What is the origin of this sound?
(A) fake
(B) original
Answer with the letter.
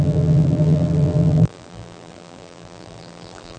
A